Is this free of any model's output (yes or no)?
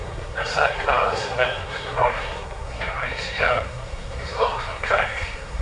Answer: no